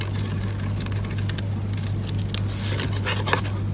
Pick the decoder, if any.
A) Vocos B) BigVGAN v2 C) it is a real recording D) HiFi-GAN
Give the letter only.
C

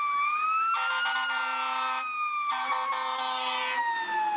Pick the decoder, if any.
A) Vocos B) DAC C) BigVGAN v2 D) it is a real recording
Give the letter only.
D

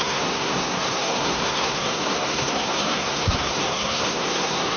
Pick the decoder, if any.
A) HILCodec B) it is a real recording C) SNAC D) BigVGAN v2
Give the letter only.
C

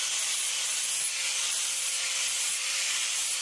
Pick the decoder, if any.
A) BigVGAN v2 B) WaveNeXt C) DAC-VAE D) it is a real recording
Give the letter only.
A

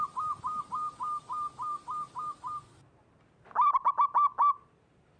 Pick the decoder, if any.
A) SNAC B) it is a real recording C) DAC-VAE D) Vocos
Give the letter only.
B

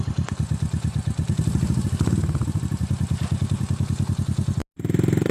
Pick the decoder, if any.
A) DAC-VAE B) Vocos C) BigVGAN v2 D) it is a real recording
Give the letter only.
D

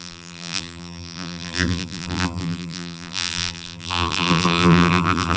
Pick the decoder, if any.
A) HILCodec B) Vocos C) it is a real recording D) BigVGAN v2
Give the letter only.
D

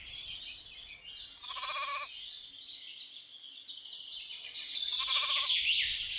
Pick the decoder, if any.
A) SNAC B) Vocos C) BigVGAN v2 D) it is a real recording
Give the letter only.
D